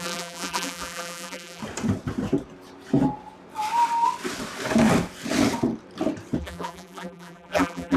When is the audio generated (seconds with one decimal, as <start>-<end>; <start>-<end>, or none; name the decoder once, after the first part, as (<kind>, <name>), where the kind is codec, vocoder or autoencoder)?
0.0-1.6 (vocoder, BigVGAN v2); 6.4-8.0